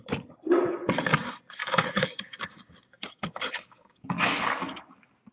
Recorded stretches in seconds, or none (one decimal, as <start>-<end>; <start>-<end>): 0.0-1.6; 4.8-5.3

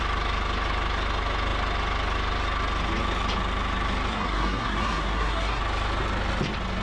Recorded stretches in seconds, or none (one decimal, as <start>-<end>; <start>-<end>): 0.0-4.1; 5.6-6.8